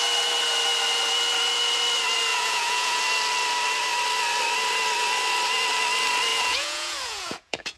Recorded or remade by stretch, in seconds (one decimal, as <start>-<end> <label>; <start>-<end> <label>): 0.0-2.3 recorded; 2.3-3.0 remade; 3.0-6.3 recorded; 6.3-7.8 remade